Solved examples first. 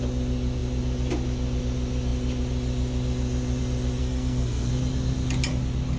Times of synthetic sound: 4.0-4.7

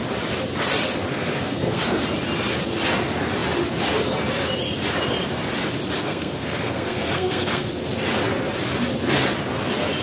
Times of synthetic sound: 1.1-2.0; 6.0-7.7